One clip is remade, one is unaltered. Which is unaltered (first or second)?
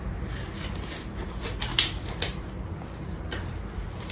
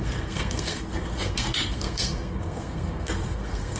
first